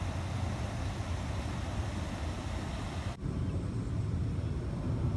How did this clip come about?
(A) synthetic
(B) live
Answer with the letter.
B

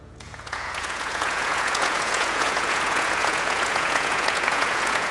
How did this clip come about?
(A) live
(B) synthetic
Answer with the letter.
B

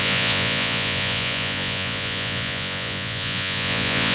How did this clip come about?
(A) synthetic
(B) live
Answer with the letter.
A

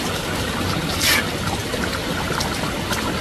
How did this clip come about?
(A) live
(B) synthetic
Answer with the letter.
A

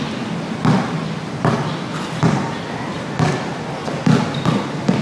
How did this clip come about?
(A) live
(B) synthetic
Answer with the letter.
A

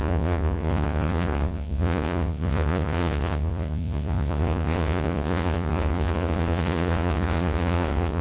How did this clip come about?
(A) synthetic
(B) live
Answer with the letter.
A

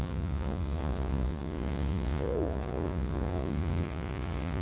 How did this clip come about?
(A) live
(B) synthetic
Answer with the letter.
B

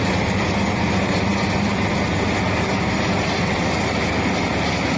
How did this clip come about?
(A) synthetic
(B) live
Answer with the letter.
B